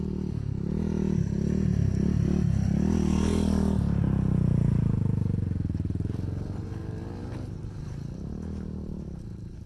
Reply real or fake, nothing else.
real